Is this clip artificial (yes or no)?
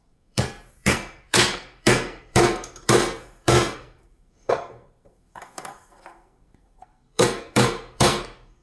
yes